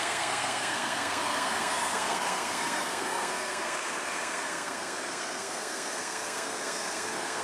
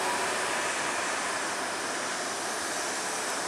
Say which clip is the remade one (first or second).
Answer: first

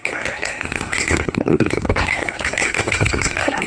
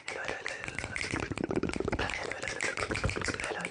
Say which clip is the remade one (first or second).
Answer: first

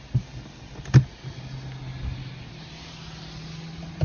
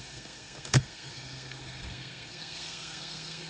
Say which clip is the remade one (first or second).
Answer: second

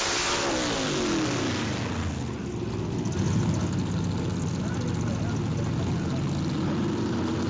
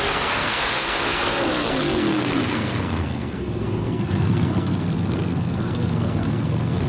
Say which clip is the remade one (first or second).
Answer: second